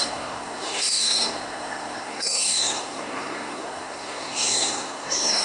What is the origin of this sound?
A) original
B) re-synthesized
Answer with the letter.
B